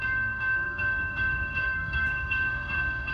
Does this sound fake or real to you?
fake